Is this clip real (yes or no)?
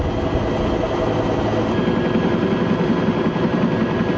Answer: yes